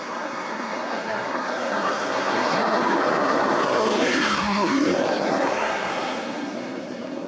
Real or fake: fake